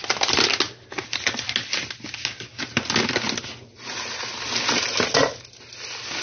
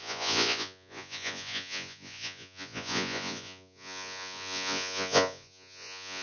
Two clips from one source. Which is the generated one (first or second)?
second